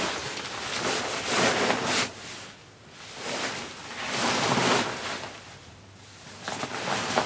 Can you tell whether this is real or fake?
real